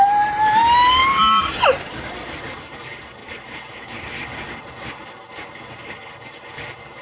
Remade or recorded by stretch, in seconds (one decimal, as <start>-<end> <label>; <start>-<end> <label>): 0.0-7.0 recorded